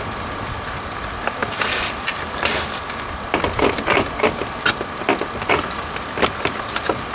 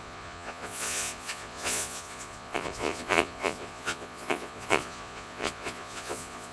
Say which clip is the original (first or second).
first